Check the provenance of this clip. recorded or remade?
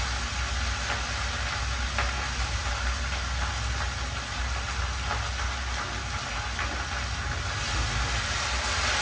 recorded